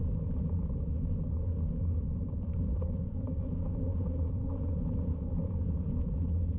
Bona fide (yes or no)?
no